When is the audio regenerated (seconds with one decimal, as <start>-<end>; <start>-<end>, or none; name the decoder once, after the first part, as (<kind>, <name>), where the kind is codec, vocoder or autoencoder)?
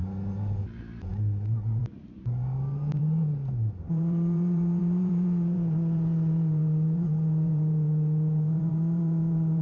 0.6-1.1 (vocoder, BigVGAN v2); 1.8-9.6